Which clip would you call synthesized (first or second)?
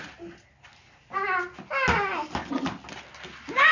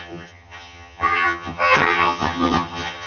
second